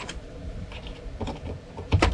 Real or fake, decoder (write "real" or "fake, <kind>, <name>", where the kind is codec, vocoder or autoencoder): fake, vocoder, BigVGAN v2